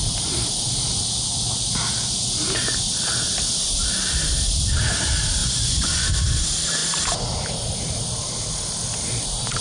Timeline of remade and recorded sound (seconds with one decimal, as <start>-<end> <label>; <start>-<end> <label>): 0.0-5.4 recorded; 5.4-6.1 remade; 6.1-9.6 recorded